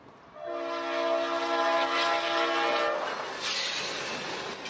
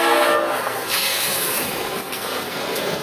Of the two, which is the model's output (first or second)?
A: second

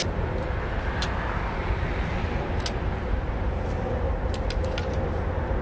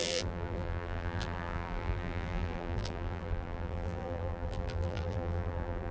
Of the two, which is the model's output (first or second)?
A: second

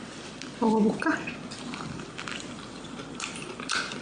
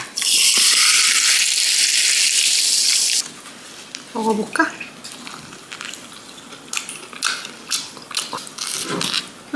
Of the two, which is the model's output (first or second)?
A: first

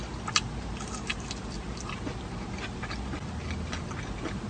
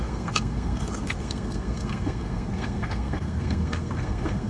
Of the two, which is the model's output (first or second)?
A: second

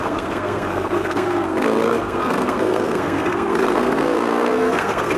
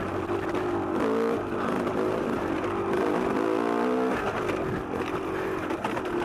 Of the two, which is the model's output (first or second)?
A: first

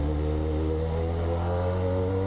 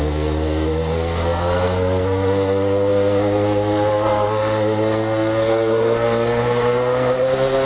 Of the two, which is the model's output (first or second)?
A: second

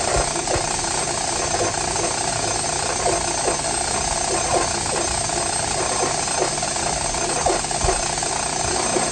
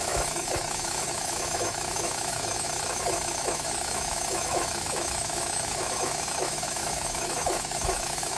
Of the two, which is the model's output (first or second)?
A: second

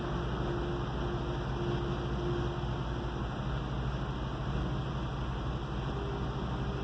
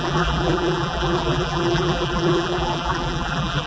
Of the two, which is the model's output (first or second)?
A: second